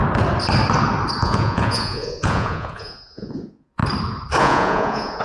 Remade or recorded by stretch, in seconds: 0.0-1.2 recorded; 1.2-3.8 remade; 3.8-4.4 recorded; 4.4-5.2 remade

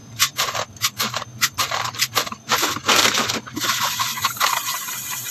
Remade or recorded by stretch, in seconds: 0.0-2.5 remade; 2.5-3.0 recorded; 3.0-5.3 remade

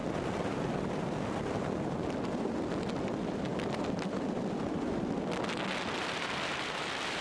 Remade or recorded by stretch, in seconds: 0.0-2.9 recorded; 2.9-3.5 remade; 3.5-6.0 recorded; 6.0-7.2 remade